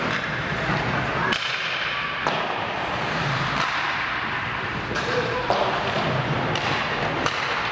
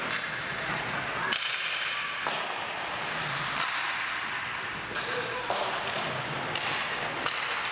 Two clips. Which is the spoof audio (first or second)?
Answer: first